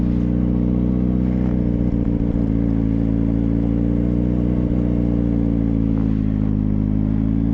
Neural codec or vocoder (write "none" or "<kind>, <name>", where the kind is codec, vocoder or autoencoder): none